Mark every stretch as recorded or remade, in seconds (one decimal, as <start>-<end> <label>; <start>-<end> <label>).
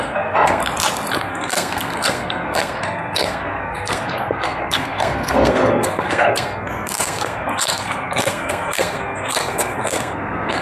0.0-0.6 remade; 0.6-1.2 recorded; 1.2-10.6 remade